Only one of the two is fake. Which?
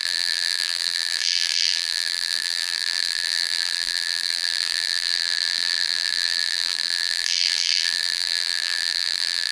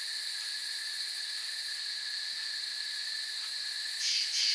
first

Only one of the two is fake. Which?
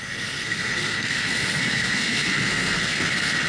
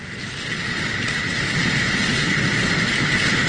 first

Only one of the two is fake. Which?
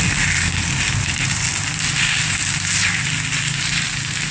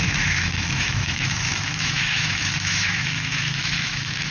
second